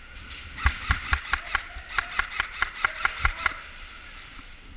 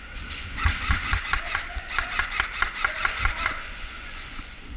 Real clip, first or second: first